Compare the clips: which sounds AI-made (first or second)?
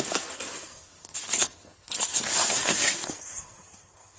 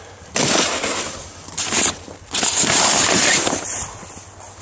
first